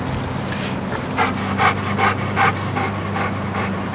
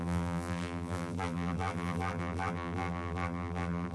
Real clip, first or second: first